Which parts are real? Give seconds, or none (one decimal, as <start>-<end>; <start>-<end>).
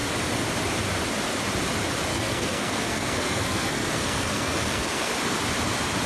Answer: 0.0-2.1; 5.1-6.1